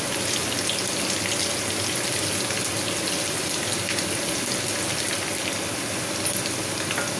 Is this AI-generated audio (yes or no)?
no